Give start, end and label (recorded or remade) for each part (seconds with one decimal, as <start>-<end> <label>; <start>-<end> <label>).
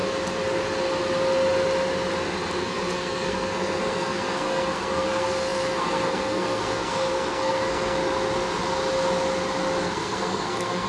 0.0-2.6 recorded; 2.6-8.0 remade; 8.0-9.8 recorded; 9.8-10.9 remade